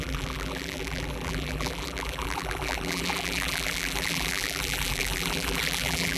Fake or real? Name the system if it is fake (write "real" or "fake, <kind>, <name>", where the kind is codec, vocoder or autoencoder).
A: fake, vocoder, BigVGAN v2